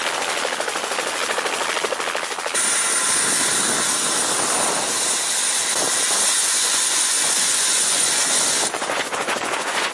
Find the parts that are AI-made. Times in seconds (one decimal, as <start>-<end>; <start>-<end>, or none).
6.4-9.9